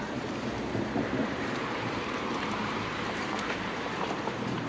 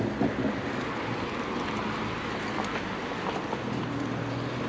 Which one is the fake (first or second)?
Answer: first